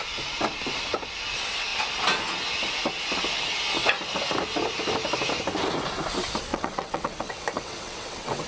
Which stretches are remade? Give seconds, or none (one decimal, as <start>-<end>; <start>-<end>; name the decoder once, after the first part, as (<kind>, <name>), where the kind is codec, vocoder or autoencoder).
6.5-8.5 (vocoder, WaveNeXt)